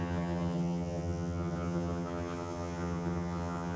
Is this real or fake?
fake